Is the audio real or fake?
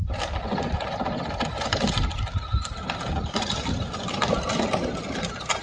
real